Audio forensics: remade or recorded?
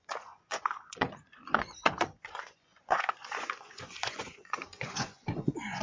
remade